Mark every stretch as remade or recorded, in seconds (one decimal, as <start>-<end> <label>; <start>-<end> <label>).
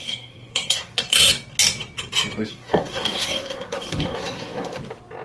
0.0-1.3 remade; 1.3-2.5 recorded; 2.5-4.8 remade; 4.8-5.2 recorded